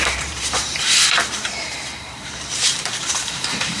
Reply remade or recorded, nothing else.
remade